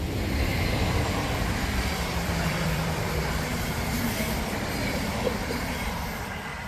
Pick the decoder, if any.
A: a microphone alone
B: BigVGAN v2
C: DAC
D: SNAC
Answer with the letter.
B